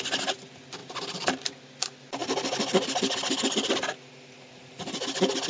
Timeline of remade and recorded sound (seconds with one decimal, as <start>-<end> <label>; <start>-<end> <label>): 0.0-0.8 recorded; 0.8-1.5 remade; 1.5-5.5 recorded